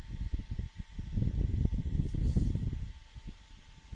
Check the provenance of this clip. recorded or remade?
recorded